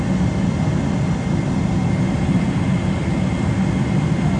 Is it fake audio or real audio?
real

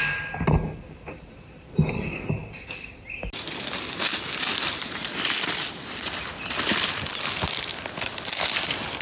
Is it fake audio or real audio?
real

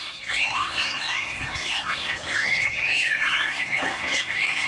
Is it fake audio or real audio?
fake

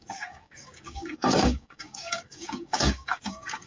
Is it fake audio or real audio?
fake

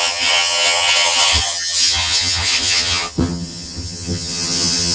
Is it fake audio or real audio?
fake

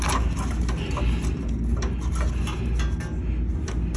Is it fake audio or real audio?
real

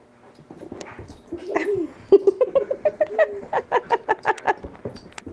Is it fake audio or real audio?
real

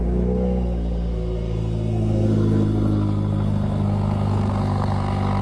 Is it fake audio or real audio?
fake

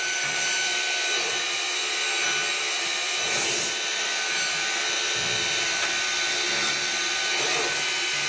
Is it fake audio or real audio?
real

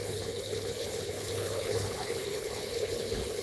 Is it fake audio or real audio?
fake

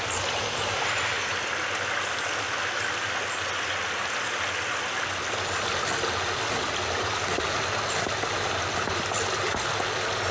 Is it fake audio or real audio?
real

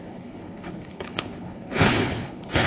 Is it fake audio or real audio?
fake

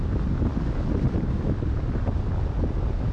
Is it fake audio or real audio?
real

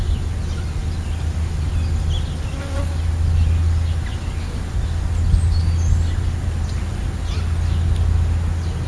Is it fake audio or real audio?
real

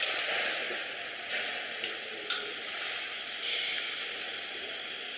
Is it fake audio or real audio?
real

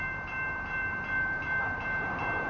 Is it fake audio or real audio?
fake